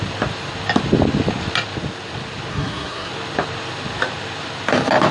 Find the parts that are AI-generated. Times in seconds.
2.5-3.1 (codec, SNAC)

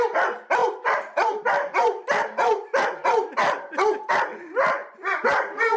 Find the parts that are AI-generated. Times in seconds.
none

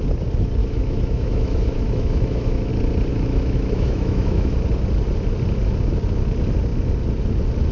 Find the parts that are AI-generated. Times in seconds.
0.6-2.7 (autoencoder, DAC-VAE); 3.1-4.5

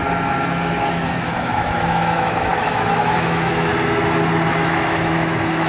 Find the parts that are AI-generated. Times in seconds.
1.2-3.7 (autoencoder, DAC-VAE); 4.5-5.7

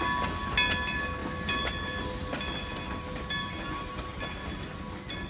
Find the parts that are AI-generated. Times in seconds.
none

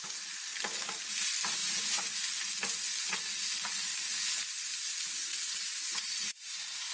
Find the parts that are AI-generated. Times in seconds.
1.6-2.2 (vocoder, Vocos); 5.3-6.9

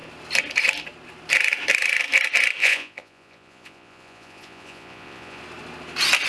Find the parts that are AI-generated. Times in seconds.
2.6-5.4 (vocoder, Vocos)